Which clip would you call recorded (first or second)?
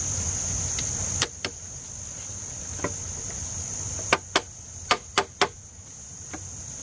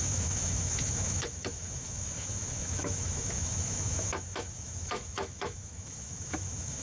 first